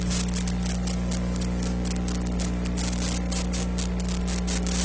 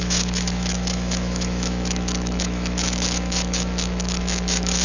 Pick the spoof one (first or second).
second